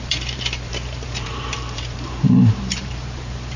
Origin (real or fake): fake